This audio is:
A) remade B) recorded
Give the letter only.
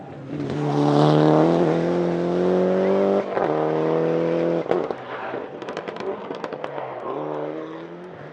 B